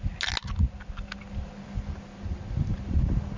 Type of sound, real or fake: real